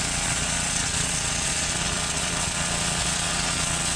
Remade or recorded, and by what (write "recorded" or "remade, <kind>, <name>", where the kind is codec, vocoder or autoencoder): remade, vocoder, Vocos